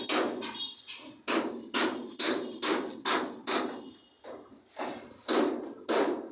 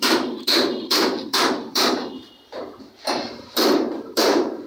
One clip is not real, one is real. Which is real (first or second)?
first